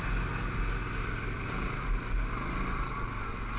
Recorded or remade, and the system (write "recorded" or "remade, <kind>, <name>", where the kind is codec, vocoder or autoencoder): recorded